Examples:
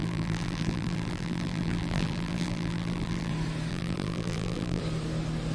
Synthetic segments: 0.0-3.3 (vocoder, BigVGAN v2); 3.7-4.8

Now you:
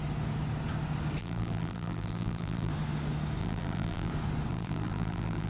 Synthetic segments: 1.2-2.7 (vocoder, BigVGAN v2); 3.4-4.1; 4.5-5.5

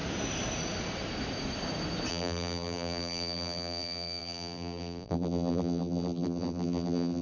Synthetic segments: 2.1-7.2 (vocoder, BigVGAN v2)

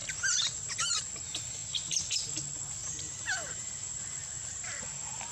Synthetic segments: 0.0-1.0 (vocoder, BigVGAN v2); 2.8-3.5

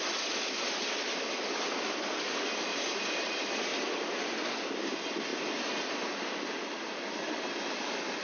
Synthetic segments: none

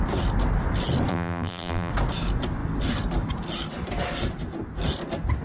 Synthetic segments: 1.1-1.9 (vocoder, BigVGAN v2)

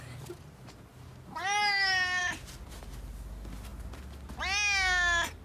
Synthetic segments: none